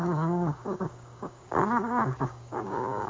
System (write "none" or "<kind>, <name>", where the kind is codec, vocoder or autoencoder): codec, DAC